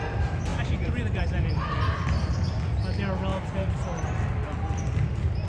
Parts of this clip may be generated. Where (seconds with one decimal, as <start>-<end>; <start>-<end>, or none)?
0.5-1.2; 3.3-4.1